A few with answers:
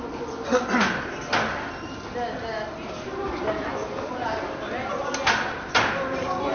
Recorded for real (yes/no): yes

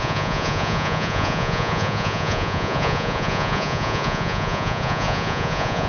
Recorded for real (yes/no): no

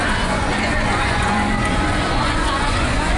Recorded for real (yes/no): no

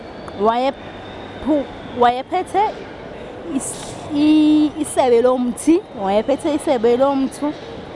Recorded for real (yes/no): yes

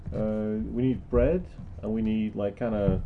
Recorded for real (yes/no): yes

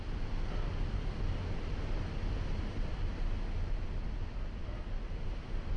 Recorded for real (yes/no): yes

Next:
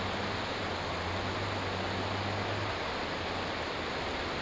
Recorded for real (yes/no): yes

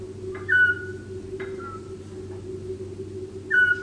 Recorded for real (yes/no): yes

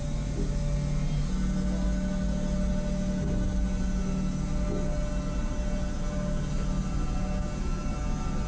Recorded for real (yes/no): yes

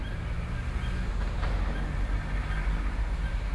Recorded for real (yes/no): yes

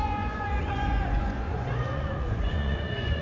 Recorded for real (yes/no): no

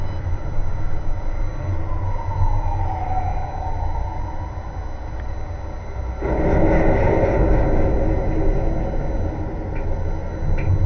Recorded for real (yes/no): yes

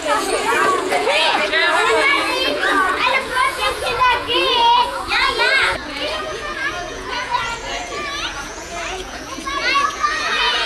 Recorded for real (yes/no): no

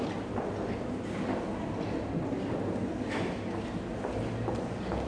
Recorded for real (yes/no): yes